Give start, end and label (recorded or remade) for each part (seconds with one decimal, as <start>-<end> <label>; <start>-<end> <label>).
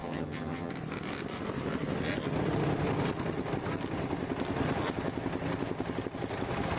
0.0-0.7 remade; 0.7-6.8 recorded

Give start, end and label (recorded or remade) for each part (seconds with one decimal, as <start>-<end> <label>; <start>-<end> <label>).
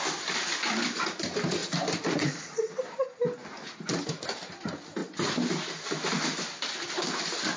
0.0-7.6 recorded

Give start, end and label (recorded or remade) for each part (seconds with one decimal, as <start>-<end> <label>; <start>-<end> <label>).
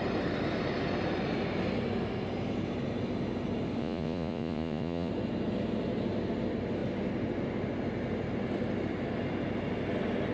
0.0-3.8 recorded; 3.8-5.1 remade; 5.1-10.3 recorded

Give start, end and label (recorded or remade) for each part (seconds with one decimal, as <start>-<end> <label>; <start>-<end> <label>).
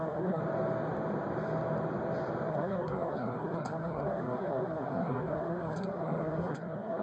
0.0-0.4 remade; 0.4-2.5 recorded; 2.5-7.0 remade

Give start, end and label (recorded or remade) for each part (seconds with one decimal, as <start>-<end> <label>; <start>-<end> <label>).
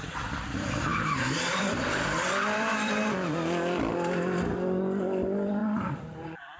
0.0-6.6 remade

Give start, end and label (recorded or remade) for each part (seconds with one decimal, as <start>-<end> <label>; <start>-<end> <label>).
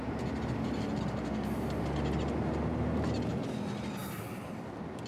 0.0-5.1 recorded